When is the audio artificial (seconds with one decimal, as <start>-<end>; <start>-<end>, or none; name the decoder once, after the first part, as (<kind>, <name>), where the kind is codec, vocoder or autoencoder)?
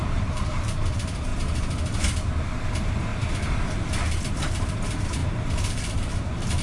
0.0-1.3 (vocoder, BigVGAN v2); 2.7-3.1; 4.3-6.6